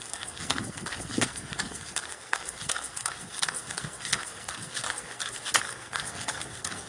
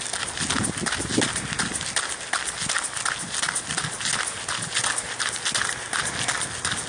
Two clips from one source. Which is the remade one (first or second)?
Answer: first